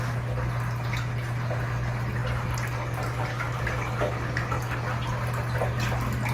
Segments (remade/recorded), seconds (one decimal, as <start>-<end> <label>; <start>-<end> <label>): 0.0-6.3 recorded